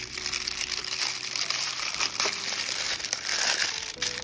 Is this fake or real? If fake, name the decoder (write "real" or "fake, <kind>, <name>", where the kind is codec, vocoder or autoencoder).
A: fake, vocoder, BigVGAN v2